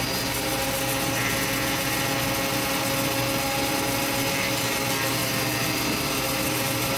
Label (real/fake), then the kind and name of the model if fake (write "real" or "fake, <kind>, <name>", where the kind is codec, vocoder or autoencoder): real